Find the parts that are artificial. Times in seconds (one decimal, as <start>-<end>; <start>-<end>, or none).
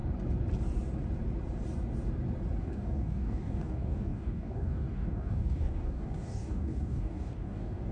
2.6-7.9